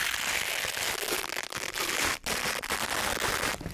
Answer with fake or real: real